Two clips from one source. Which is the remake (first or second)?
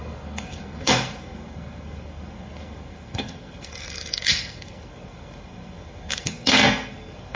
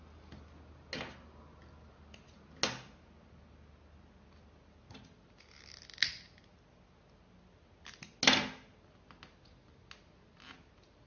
first